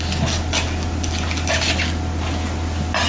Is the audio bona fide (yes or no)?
yes